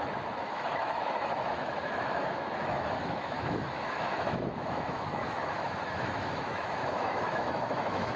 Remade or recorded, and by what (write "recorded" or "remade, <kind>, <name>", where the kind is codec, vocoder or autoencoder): remade, autoencoder, DAC-VAE